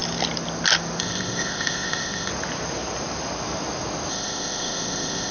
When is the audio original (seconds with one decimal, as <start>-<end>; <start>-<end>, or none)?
0.0-1.0; 2.3-4.1